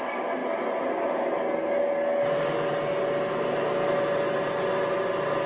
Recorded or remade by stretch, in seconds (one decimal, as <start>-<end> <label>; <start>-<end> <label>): 0.0-5.5 recorded